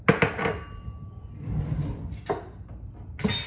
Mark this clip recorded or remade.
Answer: recorded